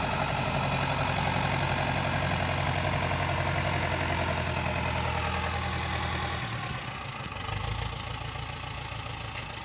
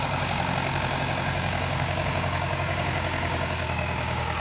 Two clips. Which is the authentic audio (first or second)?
first